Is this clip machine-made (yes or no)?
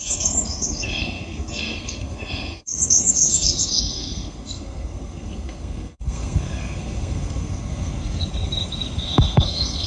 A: yes